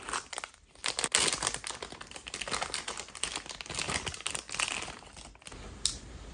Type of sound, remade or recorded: recorded